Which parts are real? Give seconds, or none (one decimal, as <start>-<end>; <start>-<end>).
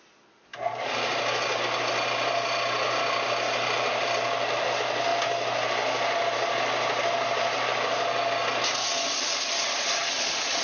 0.0-10.6